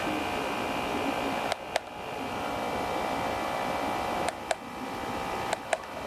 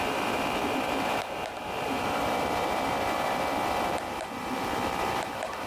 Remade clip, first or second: second